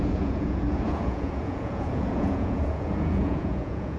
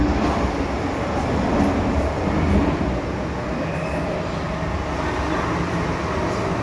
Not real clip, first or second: first